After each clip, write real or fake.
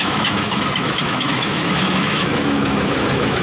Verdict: fake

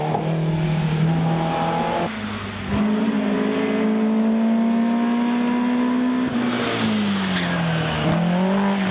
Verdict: real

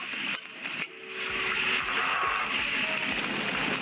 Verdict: real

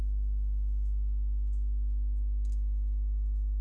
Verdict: fake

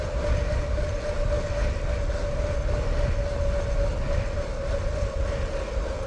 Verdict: real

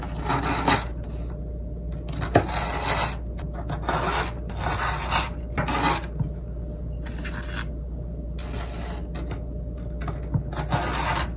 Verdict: real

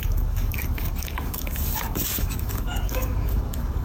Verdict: fake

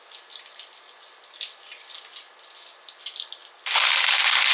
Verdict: real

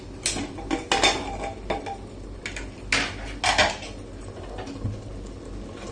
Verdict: real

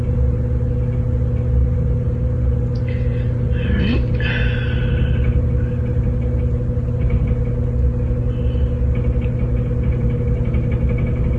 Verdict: real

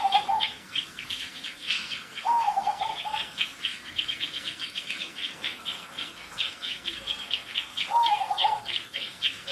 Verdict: fake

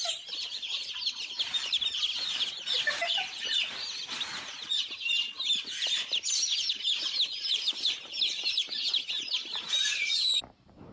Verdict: fake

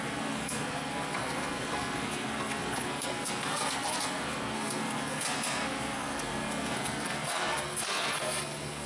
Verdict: fake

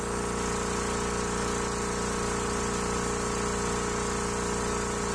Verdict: real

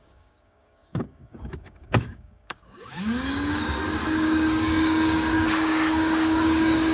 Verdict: fake